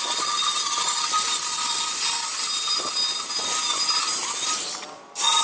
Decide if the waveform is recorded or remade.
recorded